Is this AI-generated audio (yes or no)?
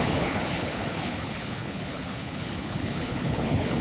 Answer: yes